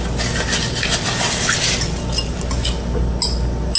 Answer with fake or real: real